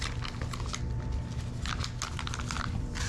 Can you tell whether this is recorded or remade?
recorded